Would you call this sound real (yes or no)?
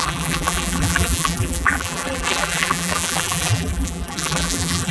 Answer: no